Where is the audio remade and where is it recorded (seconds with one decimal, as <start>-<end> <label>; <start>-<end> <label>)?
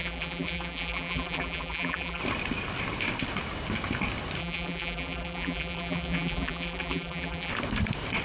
0.0-2.2 remade; 2.2-4.4 recorded; 4.4-7.5 remade; 7.5-8.2 recorded